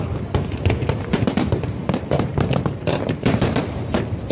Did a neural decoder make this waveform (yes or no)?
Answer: yes